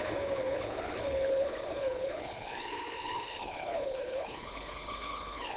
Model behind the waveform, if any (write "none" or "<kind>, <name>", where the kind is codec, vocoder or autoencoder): codec, HILCodec